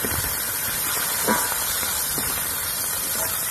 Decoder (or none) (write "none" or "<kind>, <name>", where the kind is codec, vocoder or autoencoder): none